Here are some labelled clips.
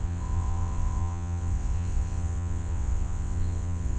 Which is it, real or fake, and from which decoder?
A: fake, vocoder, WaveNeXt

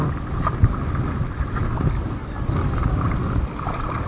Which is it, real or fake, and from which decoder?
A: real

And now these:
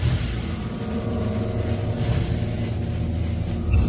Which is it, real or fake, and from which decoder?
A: real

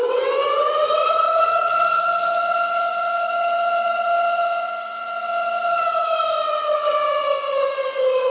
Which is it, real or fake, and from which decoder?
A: fake, vocoder, WaveNeXt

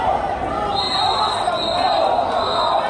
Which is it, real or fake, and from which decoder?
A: real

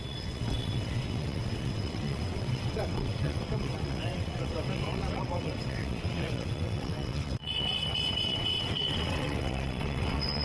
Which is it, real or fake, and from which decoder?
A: fake, vocoder, WaveNeXt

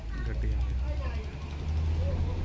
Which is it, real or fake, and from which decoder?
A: real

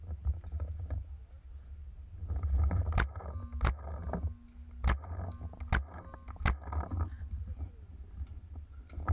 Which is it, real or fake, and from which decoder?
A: real